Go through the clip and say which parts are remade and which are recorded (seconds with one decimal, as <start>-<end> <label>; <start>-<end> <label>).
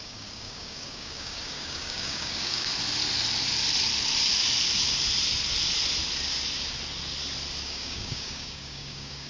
0.0-2.7 remade; 2.7-7.6 recorded; 7.6-9.3 remade